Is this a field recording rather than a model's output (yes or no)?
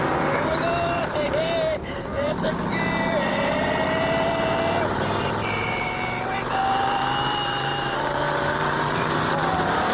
no